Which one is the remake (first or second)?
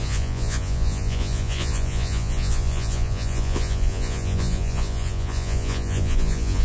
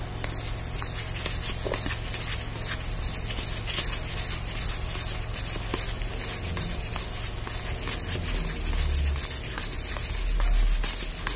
first